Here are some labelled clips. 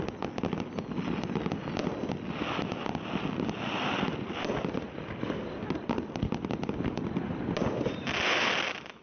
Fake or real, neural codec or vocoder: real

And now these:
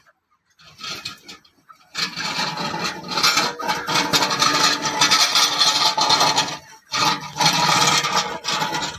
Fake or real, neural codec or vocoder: real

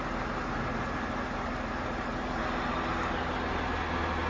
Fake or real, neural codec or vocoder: real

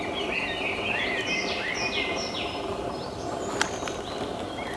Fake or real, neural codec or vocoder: real